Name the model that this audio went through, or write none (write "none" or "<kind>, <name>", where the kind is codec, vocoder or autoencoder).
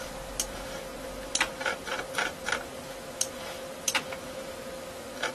none